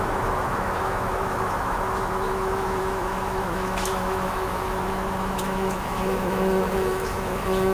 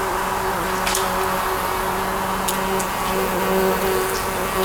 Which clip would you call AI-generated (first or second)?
first